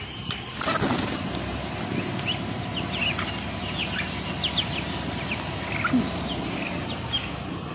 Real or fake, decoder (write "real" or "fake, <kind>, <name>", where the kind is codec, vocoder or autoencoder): real